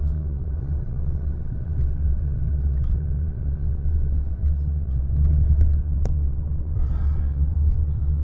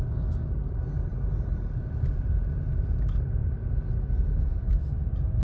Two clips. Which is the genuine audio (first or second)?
second